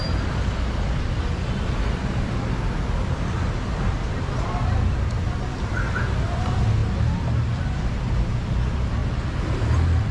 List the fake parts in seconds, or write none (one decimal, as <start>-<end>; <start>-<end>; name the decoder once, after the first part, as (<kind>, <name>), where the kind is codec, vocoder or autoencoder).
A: none